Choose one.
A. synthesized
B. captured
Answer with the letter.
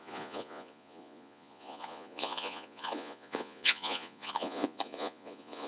A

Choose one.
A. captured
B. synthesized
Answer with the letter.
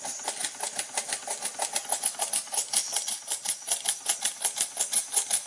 A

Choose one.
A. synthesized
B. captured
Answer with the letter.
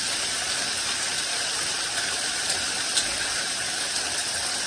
B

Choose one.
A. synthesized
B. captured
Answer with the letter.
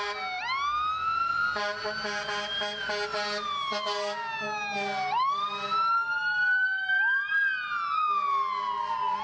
B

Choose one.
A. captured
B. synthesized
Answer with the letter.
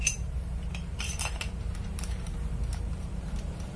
B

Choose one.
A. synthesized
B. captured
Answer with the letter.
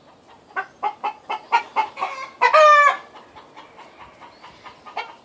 B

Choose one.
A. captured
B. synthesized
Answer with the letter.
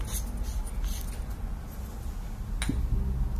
A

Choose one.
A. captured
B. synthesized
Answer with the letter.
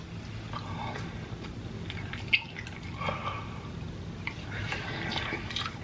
A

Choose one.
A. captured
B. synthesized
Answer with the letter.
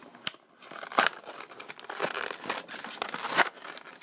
A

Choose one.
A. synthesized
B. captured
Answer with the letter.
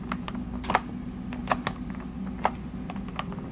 B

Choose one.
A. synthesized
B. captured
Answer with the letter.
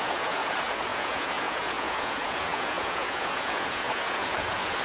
A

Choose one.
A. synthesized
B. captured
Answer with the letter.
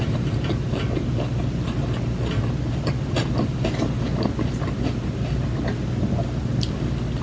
B